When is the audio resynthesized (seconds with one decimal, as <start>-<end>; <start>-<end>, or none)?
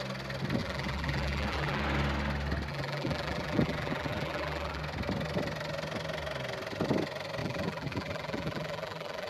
0.6-1.8; 2.7-4.8; 7.4-9.3